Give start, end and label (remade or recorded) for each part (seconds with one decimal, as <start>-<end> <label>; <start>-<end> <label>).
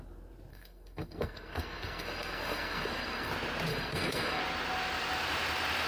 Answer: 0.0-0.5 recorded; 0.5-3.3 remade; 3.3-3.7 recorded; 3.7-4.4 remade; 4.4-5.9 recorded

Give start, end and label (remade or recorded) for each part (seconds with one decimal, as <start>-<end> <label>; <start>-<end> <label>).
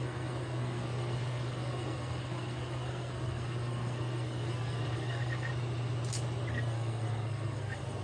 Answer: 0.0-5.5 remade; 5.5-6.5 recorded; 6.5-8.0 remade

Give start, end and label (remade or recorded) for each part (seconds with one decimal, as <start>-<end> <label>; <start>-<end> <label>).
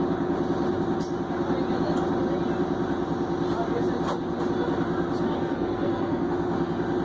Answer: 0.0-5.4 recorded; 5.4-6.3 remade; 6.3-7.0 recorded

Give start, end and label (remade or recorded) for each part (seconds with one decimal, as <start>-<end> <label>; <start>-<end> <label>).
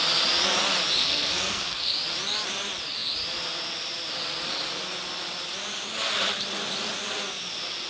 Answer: 0.0-1.0 recorded; 1.0-1.9 remade; 1.9-7.9 recorded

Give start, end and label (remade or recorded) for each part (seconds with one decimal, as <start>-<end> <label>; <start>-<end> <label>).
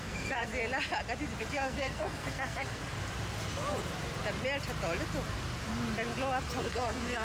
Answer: 0.0-0.5 remade; 0.5-1.4 recorded; 1.4-2.8 remade; 2.8-6.6 recorded; 6.6-7.2 remade